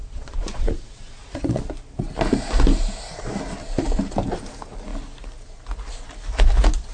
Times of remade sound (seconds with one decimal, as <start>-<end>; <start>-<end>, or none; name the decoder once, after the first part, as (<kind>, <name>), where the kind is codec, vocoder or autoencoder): 0.0-1.6 (vocoder, Vocos)